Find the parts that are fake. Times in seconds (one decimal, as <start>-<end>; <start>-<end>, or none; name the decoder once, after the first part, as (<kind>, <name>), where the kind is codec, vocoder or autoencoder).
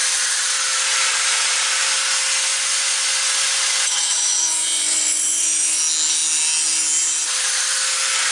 2.5-5.8 (vocoder, Vocos)